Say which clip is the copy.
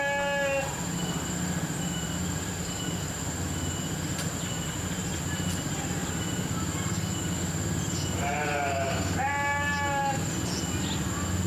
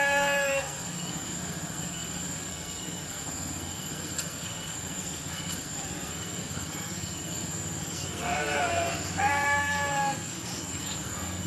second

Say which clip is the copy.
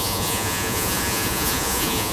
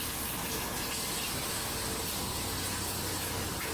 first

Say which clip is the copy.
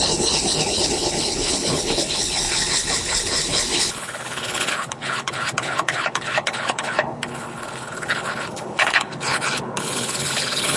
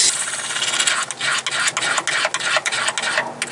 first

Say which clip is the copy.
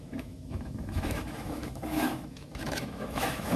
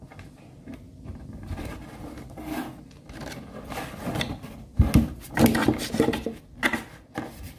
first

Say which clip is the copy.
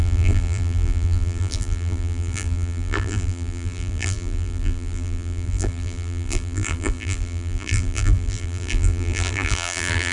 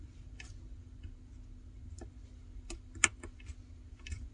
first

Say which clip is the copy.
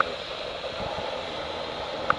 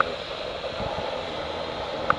first